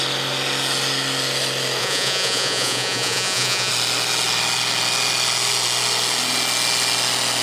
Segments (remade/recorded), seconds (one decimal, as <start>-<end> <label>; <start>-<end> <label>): 0.0-1.8 recorded; 1.8-3.7 remade; 3.7-7.4 recorded